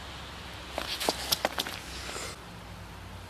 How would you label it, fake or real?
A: real